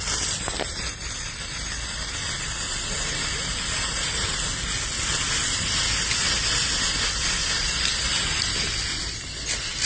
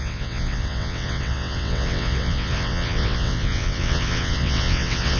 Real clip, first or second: first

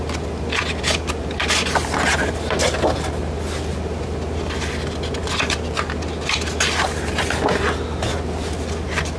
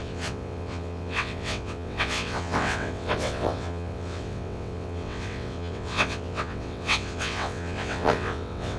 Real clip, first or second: first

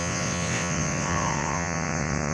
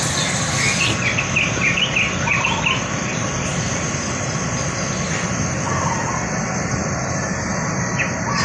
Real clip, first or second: second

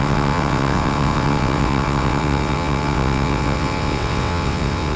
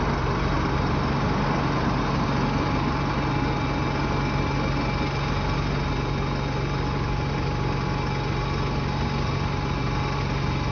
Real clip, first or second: second